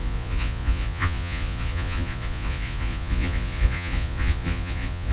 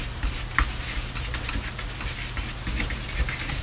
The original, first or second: second